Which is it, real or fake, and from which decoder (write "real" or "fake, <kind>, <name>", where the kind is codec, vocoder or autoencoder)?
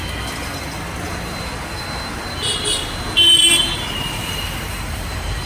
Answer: real